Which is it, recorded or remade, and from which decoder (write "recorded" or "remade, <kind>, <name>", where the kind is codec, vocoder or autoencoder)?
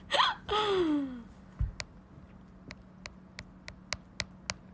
recorded